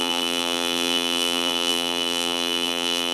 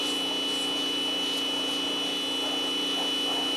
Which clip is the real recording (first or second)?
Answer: second